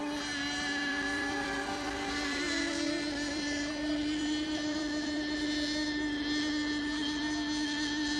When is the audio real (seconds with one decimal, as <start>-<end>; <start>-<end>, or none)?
0.0-0.8; 5.4-8.2

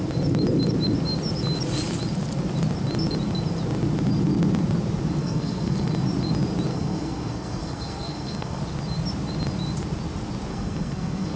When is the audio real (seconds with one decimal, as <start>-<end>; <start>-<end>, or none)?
0.0-5.2; 5.9-6.7; 8.6-10.5

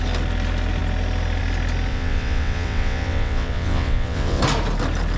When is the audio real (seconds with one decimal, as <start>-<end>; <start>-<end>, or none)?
0.0-1.9; 4.4-5.2

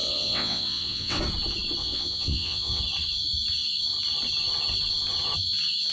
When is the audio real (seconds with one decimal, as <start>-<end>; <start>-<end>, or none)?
1.2-1.8; 2.8-5.9

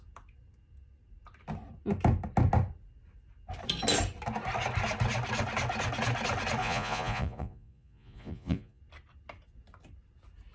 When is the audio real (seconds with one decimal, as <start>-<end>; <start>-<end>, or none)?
0.0-6.6; 8.8-10.5